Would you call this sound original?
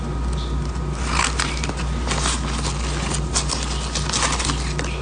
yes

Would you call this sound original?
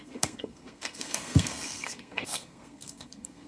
no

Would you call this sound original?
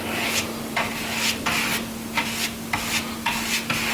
yes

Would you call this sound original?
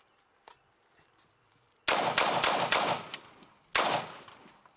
yes